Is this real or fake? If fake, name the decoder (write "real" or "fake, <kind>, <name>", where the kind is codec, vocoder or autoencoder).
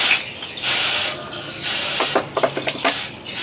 fake, vocoder, BigVGAN v2